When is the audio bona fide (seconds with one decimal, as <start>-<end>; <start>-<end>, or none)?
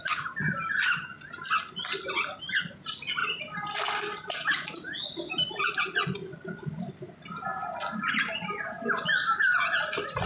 0.0-10.3